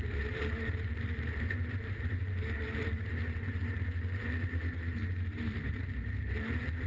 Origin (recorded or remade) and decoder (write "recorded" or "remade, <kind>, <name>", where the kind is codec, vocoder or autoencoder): remade, vocoder, BigVGAN v2